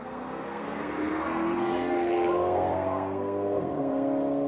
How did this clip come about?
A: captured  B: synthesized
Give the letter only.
B